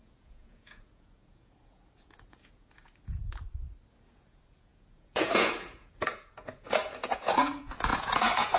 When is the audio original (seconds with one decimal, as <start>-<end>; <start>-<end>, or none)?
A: 3.2-3.9